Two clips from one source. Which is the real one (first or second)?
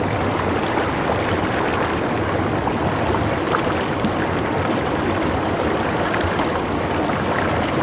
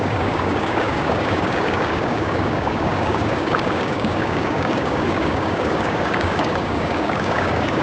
first